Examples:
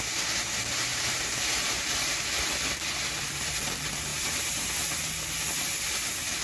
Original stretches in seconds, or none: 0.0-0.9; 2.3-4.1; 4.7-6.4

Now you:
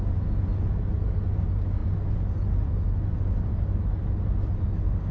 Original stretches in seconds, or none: 0.0-5.1

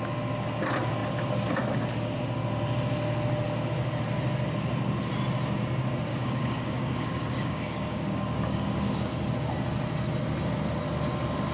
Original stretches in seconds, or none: 0.0-6.1; 9.1-11.5

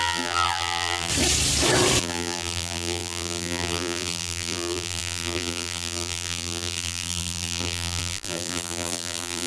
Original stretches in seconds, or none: 1.1-2.0

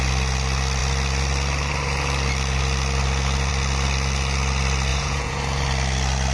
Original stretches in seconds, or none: 0.0-4.9; 5.4-6.3

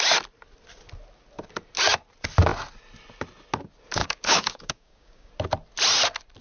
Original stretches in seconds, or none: 0.0-4.0; 5.3-6.4